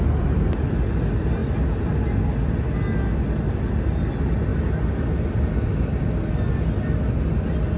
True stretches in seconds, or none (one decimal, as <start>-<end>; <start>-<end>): 0.0-7.8